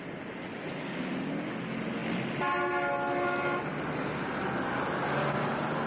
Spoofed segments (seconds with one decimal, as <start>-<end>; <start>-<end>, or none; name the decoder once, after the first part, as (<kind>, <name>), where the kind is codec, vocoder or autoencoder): none